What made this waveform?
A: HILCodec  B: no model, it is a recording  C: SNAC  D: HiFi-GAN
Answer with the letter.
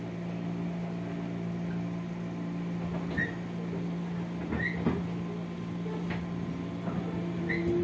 B